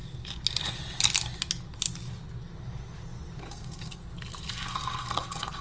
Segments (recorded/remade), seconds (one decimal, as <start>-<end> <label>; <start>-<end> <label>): 0.0-3.4 recorded; 3.4-4.0 remade; 4.0-4.5 recorded; 4.5-5.6 remade